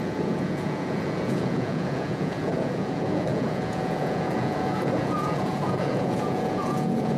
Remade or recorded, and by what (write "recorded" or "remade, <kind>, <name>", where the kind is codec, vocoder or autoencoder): remade, vocoder, Vocos